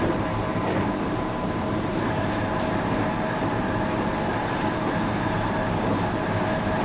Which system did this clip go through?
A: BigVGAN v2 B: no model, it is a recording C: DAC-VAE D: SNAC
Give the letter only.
A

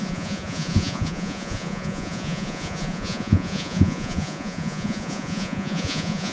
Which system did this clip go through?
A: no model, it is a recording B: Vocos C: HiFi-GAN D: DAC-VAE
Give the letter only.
B